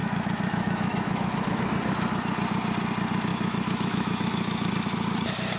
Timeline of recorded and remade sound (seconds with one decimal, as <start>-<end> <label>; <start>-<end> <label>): 0.0-1.6 remade; 1.6-3.3 recorded; 3.3-4.7 remade; 4.7-5.6 recorded

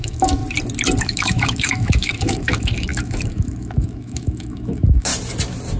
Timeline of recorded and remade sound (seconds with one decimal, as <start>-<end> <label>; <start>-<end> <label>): 0.0-0.4 remade; 0.4-1.0 recorded; 1.0-5.1 remade; 5.1-5.8 recorded

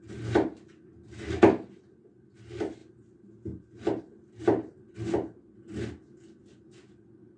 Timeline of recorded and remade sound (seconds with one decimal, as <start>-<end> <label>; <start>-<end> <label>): 0.0-7.4 recorded

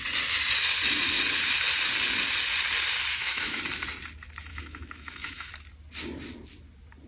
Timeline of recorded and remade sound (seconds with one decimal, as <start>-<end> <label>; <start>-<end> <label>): 0.0-3.1 recorded; 3.1-3.6 remade; 3.6-4.5 recorded; 4.5-5.5 remade; 5.5-7.1 recorded

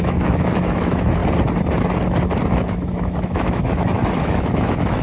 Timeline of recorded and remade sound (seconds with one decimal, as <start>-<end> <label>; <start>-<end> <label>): 0.0-1.2 remade; 1.2-2.5 recorded; 2.5-5.0 remade

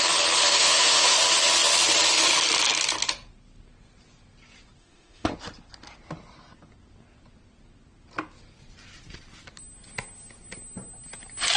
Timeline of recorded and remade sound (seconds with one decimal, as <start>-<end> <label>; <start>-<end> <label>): 0.0-0.5 recorded; 0.5-1.2 remade; 1.2-4.8 recorded; 4.8-5.3 remade; 5.3-11.6 recorded